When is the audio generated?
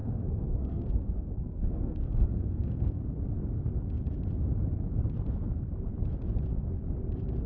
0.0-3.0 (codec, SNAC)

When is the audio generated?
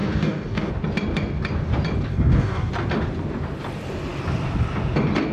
0.0-0.7 (codec, DAC); 2.1-2.7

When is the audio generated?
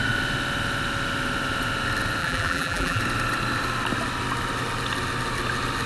2.2-3.0 (vocoder, BigVGAN v2)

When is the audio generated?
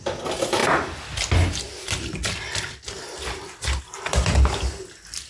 none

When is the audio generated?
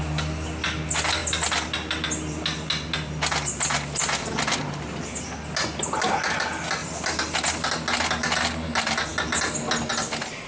none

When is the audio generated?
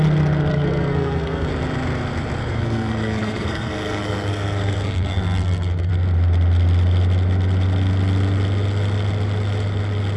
0.5-1.5 (codec, SNAC); 2.4-5.9